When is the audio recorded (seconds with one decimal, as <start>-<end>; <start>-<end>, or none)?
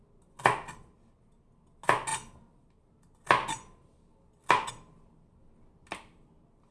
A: 0.0-6.7